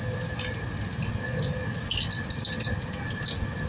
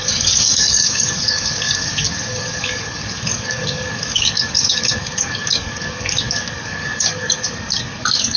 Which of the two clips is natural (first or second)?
first